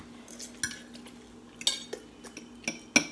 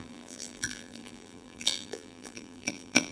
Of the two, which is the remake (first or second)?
second